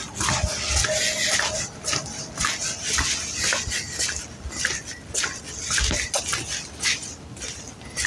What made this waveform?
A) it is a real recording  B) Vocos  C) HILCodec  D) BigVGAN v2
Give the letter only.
A